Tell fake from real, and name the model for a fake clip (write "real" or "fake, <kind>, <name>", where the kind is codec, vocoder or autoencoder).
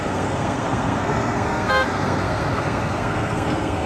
fake, codec, SNAC